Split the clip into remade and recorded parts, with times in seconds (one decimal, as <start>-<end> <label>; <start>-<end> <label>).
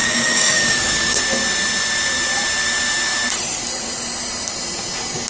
0.0-1.2 remade; 1.2-5.3 recorded